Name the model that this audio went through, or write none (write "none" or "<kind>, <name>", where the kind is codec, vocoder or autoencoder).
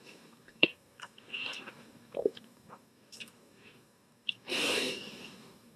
codec, DAC